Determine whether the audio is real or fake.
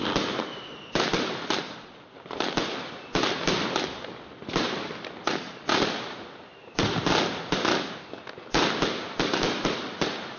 real